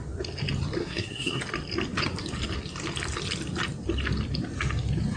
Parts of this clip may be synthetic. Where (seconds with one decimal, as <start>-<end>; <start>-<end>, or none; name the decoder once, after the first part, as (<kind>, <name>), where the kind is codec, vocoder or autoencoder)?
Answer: 0.8-1.4 (codec, SNAC)